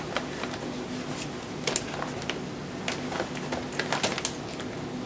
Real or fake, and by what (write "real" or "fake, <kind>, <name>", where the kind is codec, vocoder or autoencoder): real